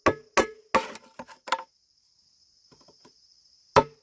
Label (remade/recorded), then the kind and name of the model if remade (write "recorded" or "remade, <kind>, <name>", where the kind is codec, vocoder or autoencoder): recorded